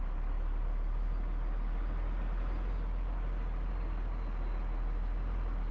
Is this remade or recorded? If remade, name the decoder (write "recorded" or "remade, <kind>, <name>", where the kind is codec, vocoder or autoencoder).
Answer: recorded